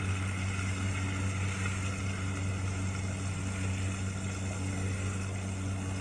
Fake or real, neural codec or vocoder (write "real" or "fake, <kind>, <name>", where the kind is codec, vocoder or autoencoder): real